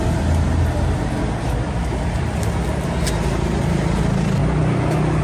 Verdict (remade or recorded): recorded